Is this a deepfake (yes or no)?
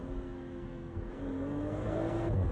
yes